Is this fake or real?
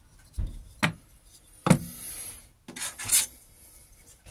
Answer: real